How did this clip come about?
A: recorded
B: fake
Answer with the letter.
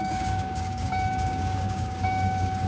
B